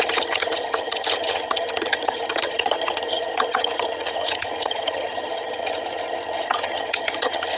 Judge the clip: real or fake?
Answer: fake